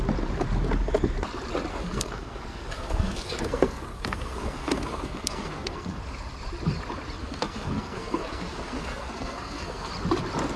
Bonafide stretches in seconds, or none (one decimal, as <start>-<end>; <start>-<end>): 0.0-1.7; 6.0-7.2; 9.9-10.6